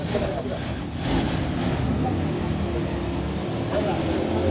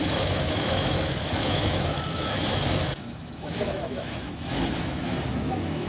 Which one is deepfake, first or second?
second